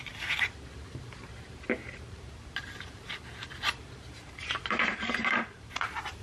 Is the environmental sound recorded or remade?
remade